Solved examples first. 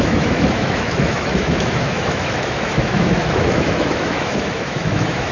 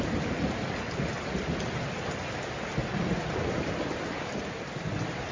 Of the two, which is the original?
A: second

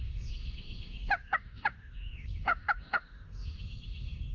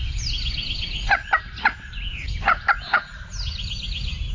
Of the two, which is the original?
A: second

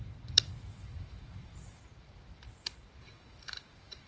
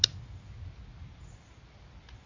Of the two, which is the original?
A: second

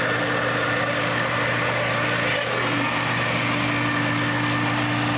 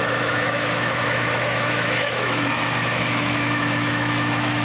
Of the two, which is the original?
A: first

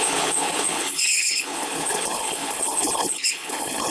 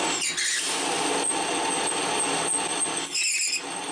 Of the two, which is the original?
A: second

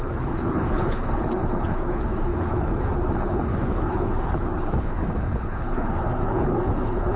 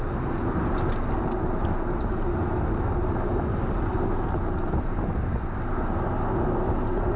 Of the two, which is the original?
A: second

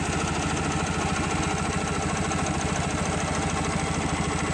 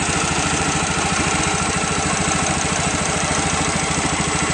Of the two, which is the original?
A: first